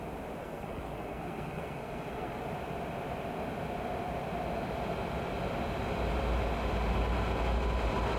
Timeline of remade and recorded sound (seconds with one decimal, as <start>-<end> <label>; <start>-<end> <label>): 0.0-0.4 recorded; 0.4-2.4 remade; 2.4-8.2 recorded